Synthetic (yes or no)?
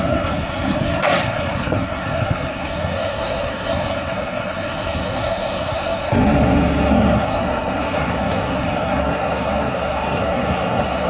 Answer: yes